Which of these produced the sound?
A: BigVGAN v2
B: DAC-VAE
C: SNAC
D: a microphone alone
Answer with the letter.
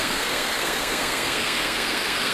C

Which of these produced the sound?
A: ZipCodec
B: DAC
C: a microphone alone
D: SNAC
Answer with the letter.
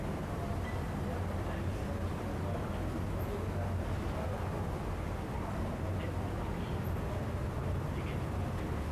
C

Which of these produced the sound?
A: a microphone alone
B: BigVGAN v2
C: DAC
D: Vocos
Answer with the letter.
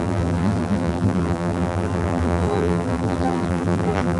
B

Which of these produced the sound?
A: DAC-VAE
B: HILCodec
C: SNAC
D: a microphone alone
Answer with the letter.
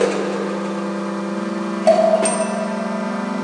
D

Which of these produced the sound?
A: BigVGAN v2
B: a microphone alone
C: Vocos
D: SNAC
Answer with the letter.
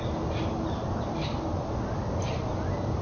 B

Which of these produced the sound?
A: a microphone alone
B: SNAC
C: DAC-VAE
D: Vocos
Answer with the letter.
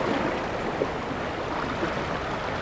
A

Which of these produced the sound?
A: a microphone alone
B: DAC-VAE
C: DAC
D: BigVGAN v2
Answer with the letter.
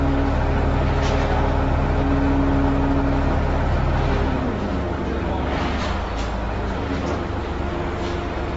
A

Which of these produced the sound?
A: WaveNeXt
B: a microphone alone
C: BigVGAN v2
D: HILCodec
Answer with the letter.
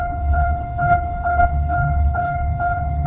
D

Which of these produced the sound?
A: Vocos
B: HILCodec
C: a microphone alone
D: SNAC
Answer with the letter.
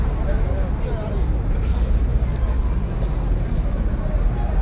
C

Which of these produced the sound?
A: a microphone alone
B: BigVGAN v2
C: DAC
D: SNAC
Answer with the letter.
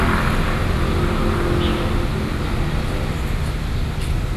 A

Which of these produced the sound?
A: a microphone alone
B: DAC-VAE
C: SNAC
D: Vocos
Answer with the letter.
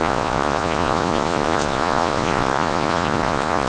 D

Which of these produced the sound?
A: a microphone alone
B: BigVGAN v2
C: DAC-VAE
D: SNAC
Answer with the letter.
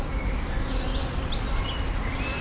A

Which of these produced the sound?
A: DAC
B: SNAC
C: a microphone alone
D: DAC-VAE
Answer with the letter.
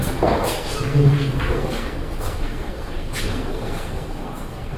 B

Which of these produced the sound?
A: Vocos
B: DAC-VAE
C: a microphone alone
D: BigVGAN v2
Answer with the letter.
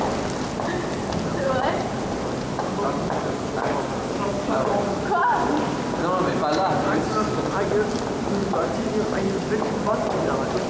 C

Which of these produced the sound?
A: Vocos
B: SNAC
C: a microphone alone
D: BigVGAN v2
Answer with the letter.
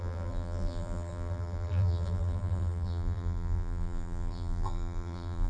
D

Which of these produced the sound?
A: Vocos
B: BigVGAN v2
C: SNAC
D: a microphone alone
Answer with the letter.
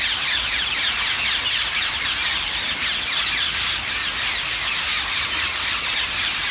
D